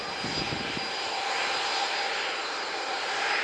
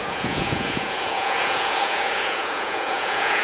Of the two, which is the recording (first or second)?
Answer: first